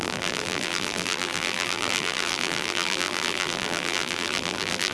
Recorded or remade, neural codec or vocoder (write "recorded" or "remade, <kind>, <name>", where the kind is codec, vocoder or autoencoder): remade, vocoder, BigVGAN v2